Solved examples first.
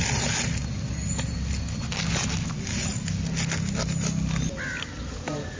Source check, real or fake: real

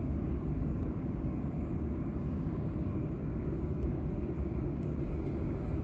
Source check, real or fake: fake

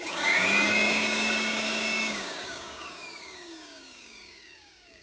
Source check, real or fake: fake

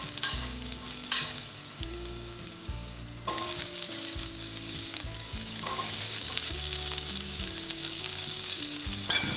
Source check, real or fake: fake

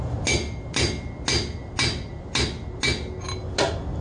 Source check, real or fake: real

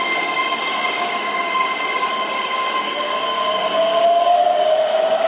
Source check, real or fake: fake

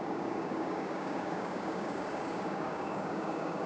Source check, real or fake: fake